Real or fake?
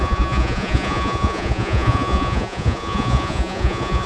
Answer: fake